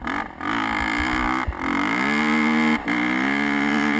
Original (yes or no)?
yes